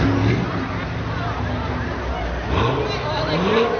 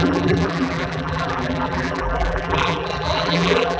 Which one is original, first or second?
first